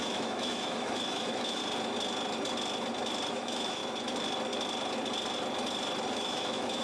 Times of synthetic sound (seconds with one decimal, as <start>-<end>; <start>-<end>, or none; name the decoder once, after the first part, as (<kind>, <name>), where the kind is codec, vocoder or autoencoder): 0.0-1.6 (autoencoder, DAC-VAE); 3.3-3.8; 6.1-6.8